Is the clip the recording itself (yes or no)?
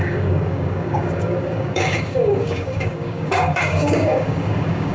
no